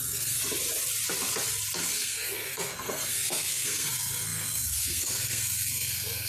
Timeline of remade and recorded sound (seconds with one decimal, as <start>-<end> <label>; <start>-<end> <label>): 0.0-0.4 remade; 0.4-1.8 recorded; 1.8-6.3 remade